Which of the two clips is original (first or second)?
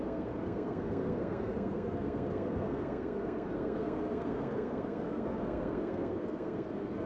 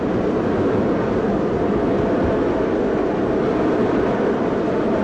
second